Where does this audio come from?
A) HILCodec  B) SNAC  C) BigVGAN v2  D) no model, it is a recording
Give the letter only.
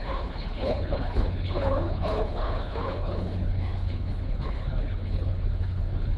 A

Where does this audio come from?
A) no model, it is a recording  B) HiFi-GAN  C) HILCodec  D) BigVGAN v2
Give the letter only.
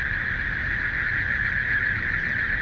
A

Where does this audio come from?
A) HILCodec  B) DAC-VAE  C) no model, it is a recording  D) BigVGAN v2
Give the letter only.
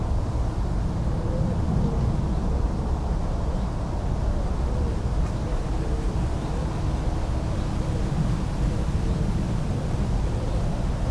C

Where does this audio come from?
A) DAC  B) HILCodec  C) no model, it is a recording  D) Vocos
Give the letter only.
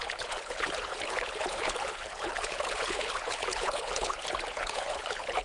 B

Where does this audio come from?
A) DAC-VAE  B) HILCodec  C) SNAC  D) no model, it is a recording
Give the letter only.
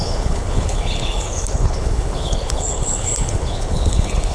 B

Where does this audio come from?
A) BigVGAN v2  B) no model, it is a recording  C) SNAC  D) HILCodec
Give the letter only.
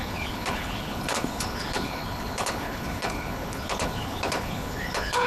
D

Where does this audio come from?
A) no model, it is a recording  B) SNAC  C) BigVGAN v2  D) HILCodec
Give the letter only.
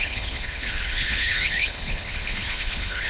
D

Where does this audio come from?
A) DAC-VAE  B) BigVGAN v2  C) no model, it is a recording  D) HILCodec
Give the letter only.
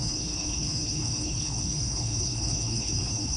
D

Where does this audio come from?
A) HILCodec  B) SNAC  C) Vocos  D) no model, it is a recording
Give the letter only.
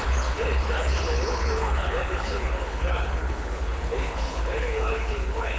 A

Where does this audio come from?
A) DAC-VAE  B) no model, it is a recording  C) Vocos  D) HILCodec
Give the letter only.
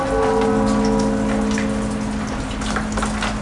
B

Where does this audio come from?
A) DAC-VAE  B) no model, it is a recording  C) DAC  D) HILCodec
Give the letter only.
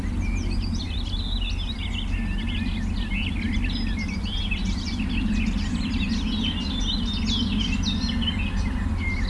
B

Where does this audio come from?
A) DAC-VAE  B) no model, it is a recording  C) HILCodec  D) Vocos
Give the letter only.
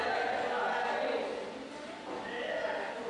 B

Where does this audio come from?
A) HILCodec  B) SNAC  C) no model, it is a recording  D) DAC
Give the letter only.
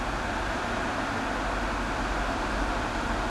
C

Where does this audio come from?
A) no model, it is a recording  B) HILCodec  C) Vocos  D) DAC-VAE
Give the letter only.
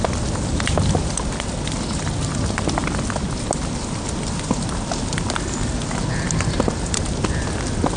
A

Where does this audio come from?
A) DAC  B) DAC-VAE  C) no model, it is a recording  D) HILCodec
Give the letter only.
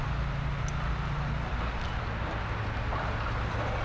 C